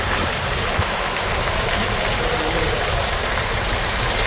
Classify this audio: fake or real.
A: fake